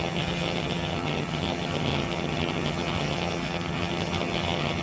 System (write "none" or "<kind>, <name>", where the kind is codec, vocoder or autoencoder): vocoder, HiFi-GAN